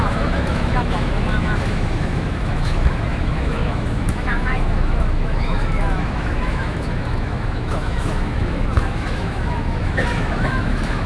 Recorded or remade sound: remade